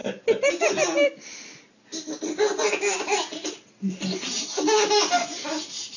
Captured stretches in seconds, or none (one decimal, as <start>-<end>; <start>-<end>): 0.0-6.0